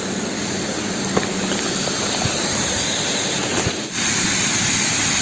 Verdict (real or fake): real